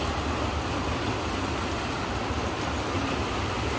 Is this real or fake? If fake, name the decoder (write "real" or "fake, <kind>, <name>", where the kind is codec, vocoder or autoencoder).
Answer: real